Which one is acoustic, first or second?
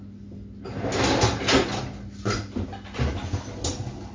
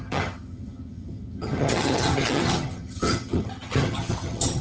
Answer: first